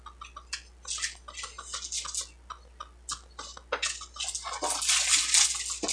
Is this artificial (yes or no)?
no